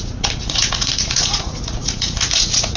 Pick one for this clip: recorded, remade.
remade